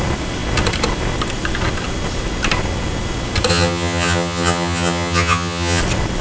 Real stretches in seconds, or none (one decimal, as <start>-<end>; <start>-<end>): 0.0-3.5; 5.8-6.2